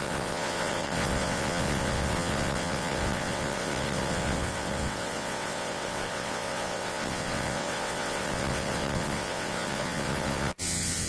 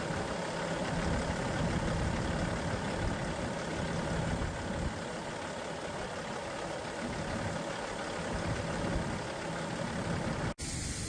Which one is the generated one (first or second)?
first